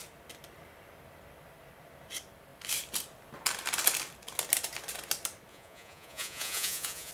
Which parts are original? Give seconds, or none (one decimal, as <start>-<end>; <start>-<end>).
0.0-5.5